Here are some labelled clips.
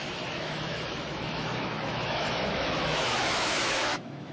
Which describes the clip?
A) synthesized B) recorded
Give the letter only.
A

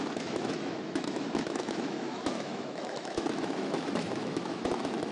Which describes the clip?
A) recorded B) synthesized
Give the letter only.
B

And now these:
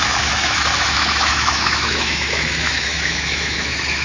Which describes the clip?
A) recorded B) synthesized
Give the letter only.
B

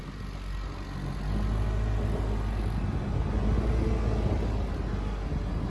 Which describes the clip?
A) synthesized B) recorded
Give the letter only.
B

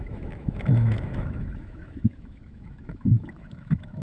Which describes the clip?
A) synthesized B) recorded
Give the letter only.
A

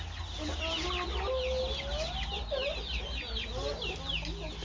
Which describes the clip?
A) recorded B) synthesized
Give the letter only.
A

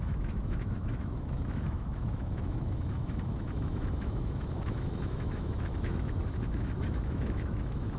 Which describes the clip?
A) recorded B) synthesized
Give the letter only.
B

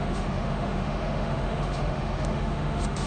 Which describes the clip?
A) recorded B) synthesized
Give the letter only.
B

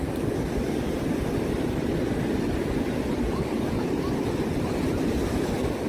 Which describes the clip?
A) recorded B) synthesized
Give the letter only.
A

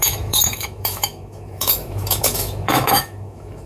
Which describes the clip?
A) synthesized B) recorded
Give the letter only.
A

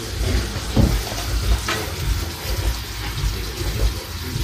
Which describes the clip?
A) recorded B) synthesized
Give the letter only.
A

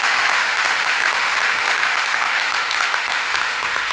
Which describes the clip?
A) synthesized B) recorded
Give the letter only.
A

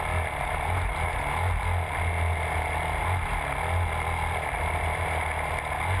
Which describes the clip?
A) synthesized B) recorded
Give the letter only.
B